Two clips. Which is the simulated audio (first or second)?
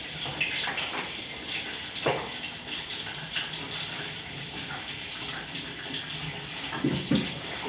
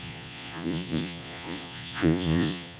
second